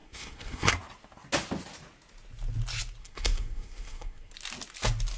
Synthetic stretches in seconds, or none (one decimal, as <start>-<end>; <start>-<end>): 0.0-0.7; 3.0-4.3